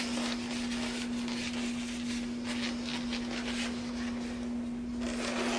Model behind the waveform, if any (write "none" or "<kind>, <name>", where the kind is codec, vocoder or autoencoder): none